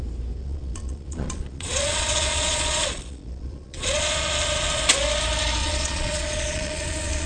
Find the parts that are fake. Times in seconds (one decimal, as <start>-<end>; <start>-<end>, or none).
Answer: 0.4-4.8; 5.6-7.3